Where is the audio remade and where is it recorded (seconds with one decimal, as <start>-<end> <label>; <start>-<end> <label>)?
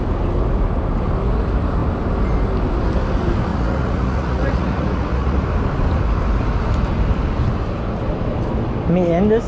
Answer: 0.0-3.5 recorded; 3.5-5.4 remade; 5.4-9.5 recorded